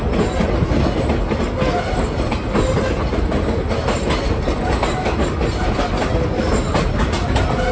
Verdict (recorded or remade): recorded